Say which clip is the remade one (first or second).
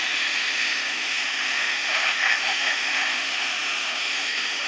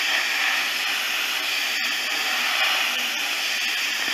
first